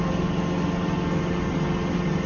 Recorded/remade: recorded